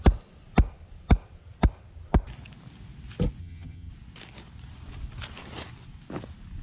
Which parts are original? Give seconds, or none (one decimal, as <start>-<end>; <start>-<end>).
0.0-3.4; 3.9-6.6